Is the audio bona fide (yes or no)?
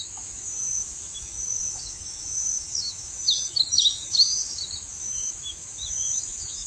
no